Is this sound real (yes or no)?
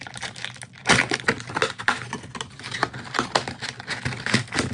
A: yes